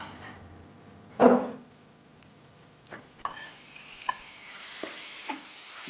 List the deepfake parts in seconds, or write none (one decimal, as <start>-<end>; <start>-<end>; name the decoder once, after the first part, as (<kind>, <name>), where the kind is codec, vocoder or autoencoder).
0.0-5.9 (vocoder, BigVGAN v2)